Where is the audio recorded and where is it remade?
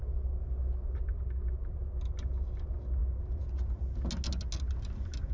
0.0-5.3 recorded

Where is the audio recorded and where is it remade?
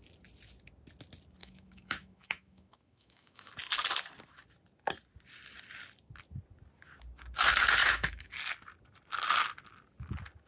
0.0-1.4 recorded; 1.4-3.5 remade; 3.5-7.8 recorded; 7.8-8.3 remade; 8.3-10.5 recorded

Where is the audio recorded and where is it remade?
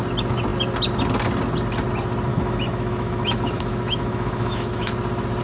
0.0-2.3 recorded; 2.3-4.9 remade; 4.9-5.4 recorded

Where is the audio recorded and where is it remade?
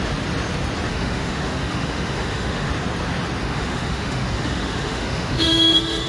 0.0-0.9 recorded; 0.9-2.7 remade; 2.7-3.4 recorded; 3.4-6.1 remade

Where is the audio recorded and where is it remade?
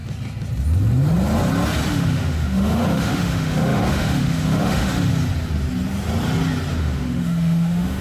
0.0-1.9 recorded; 1.9-5.1 remade; 5.1-6.8 recorded; 6.8-8.0 remade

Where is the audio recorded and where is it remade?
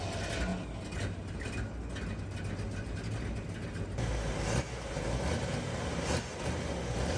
0.0-7.2 recorded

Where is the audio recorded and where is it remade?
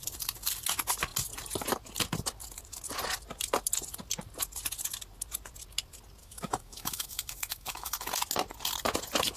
0.0-6.2 recorded; 6.2-8.1 remade; 8.1-9.4 recorded